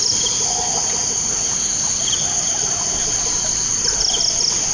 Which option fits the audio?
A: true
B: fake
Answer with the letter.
A